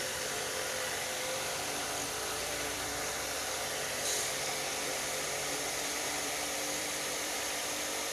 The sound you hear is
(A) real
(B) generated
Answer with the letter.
B